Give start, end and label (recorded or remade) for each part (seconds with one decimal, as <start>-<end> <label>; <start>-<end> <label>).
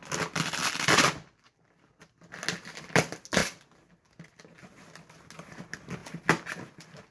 0.0-7.1 recorded